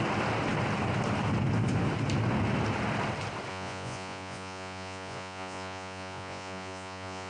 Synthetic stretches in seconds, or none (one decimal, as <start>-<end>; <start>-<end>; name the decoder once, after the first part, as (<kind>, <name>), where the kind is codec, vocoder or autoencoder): 3.5-7.3 (vocoder, Vocos)